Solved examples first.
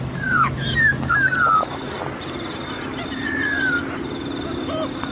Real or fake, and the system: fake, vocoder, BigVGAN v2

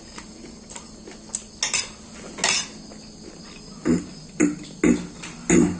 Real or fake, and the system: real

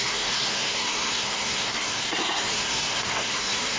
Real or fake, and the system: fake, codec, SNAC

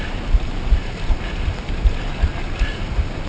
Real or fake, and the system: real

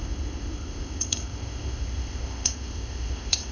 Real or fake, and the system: fake, codec, ZipCodec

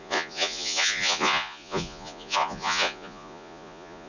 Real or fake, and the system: fake, vocoder, Vocos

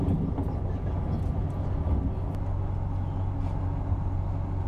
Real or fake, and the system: real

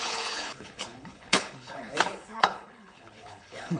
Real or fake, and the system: fake, codec, HILCodec